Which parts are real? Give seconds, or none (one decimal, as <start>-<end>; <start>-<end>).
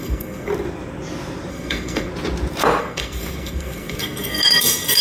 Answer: 0.5-1.5; 2.1-2.8